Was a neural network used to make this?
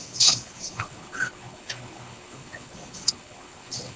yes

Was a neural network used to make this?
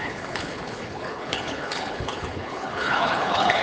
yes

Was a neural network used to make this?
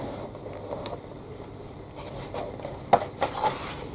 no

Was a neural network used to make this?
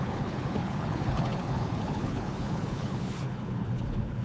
yes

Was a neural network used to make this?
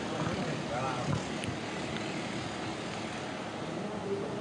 no